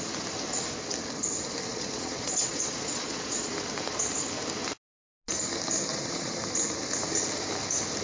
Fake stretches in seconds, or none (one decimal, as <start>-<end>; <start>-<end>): 1.7-3.5; 5.9-6.4